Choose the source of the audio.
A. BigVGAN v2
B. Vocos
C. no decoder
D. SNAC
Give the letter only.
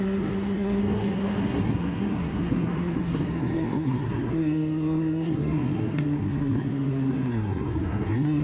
D